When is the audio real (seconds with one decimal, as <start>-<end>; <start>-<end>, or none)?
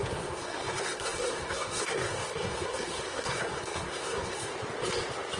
4.5-5.4